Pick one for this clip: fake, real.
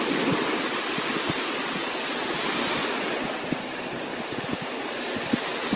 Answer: real